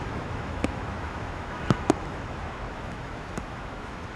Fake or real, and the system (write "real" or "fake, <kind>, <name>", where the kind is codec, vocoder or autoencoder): fake, autoencoder, DAC-VAE